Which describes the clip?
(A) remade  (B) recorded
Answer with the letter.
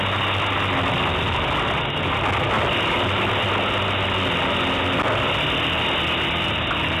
B